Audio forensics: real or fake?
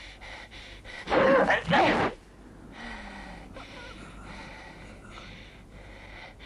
real